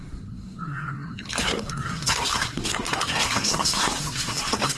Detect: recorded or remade remade